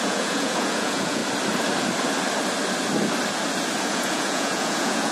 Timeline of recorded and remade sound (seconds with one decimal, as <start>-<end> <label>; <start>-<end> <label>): 0.0-1.2 remade; 1.2-3.8 recorded; 3.8-5.1 remade